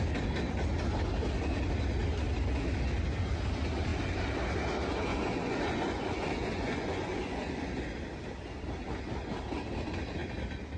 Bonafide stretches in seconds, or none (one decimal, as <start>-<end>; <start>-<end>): 0.0-5.1; 7.6-10.8